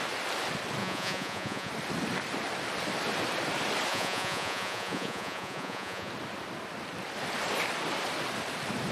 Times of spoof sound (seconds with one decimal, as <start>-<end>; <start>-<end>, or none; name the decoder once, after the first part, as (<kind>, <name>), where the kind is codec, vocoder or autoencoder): 0.8-1.7 (vocoder, Vocos); 3.9-6.1